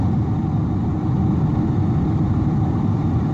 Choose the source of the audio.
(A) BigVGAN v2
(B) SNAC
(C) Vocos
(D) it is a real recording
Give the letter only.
D